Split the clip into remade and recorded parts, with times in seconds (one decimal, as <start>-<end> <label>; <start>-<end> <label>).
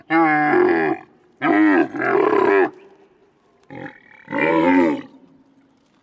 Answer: 0.0-3.2 recorded; 3.2-4.5 remade; 4.5-6.0 recorded